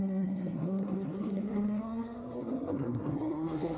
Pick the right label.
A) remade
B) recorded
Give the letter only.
A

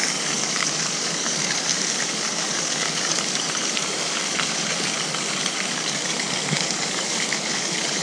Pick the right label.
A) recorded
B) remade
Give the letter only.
B